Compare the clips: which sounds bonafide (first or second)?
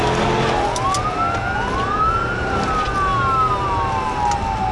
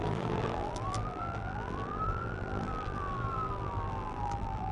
first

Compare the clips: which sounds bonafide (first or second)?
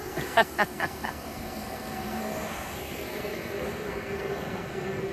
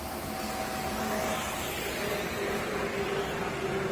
second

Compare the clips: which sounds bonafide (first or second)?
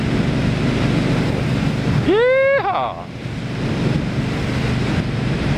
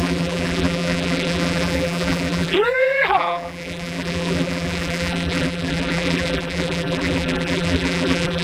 first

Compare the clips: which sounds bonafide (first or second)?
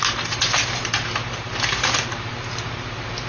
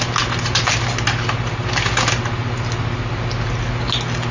second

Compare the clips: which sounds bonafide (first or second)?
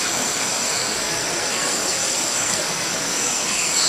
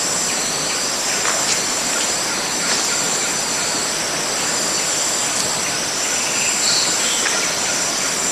second